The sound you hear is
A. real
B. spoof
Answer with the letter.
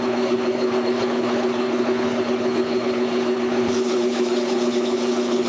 B